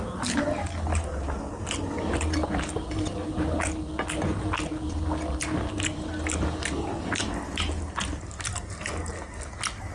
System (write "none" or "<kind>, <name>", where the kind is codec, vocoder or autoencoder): none